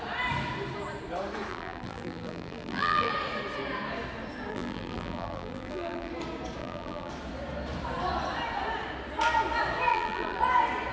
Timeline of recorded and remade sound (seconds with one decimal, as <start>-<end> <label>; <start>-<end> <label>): 0.0-1.5 recorded; 1.5-3.1 remade; 3.1-4.5 recorded; 4.5-6.1 remade; 6.1-6.6 recorded; 6.6-7.1 remade; 7.1-9.9 recorded; 9.9-10.4 remade; 10.4-10.9 recorded